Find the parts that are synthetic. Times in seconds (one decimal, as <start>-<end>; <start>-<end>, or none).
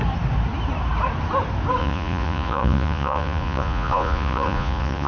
1.8-5.1